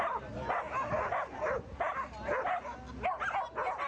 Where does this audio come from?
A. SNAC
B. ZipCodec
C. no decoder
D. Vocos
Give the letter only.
C